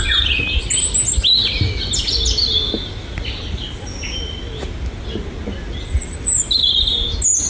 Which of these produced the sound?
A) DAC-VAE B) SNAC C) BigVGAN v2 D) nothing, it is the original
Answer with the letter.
D